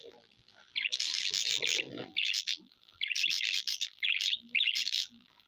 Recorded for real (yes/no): no